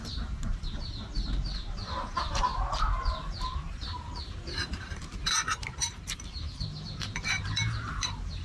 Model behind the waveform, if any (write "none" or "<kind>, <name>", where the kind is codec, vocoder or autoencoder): vocoder, BigVGAN v2